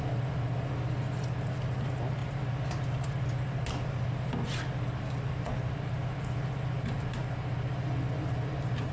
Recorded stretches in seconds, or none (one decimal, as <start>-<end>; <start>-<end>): 0.0-8.9